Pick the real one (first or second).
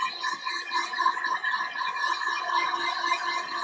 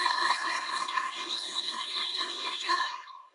first